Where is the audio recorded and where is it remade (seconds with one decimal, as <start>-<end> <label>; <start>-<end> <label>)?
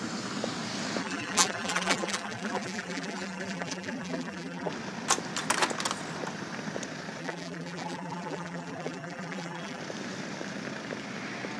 0.0-1.0 recorded; 1.0-4.7 remade; 4.7-7.2 recorded; 7.2-9.8 remade; 9.8-11.6 recorded